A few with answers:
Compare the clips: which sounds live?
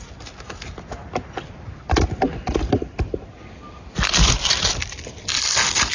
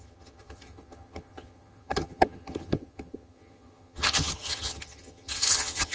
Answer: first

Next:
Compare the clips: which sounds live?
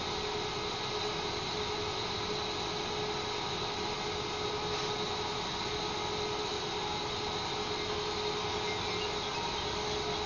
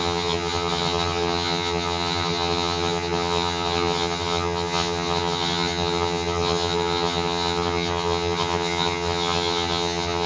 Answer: first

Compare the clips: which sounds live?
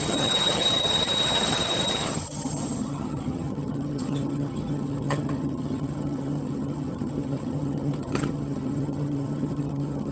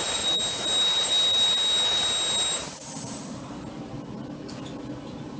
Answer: second